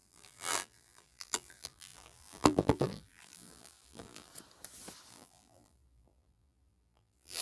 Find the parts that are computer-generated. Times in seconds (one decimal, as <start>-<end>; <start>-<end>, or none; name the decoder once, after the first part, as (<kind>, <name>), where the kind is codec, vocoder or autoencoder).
0.0-4.3 (vocoder, BigVGAN v2); 5.1-7.4